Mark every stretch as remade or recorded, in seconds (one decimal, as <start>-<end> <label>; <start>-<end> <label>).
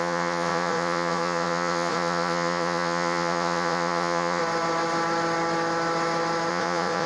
0.0-4.4 remade; 4.4-6.5 recorded; 6.5-7.1 remade